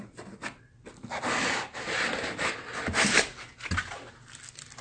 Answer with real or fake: real